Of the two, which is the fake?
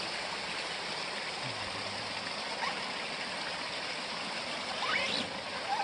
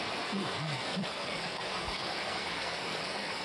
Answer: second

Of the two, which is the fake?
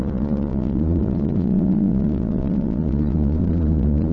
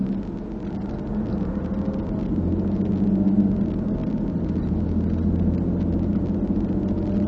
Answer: first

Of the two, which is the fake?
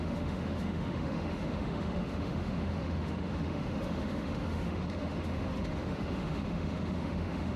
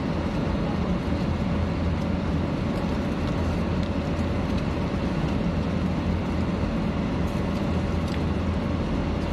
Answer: first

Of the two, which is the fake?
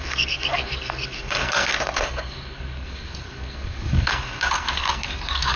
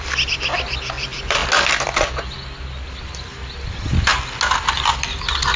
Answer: first